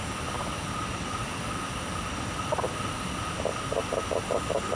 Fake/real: real